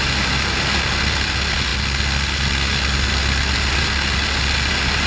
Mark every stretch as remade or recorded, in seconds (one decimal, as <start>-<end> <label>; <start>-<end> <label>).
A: 0.0-5.1 recorded